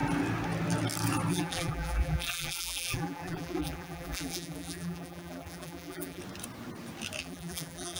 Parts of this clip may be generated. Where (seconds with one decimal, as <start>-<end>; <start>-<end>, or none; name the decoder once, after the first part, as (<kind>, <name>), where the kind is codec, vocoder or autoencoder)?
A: 1.3-6.2 (vocoder, BigVGAN v2); 7.2-8.0